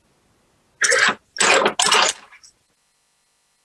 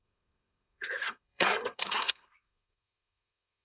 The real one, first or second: first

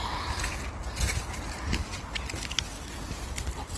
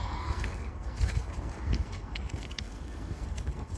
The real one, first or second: first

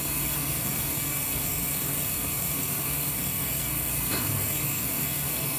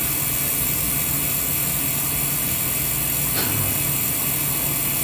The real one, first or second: second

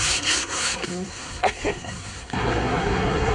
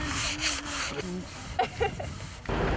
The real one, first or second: second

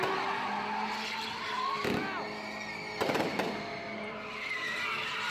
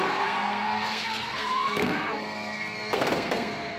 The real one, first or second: first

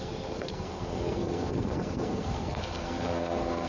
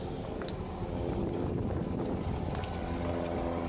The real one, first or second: second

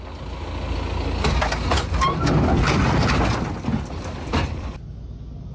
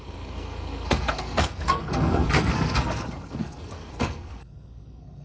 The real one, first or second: first